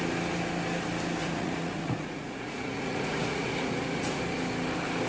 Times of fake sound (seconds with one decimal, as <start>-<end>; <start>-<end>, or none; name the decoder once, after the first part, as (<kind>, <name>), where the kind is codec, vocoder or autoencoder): 1.2-4.2 (vocoder, Vocos)